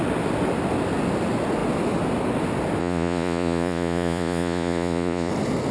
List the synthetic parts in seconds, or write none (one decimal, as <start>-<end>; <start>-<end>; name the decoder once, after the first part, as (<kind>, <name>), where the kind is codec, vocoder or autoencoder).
2.8-5.3 (vocoder, Vocos)